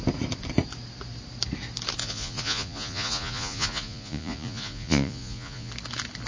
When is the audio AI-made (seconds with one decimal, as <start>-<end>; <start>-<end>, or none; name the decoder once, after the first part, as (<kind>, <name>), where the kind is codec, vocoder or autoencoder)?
2.0-5.7 (vocoder, Vocos)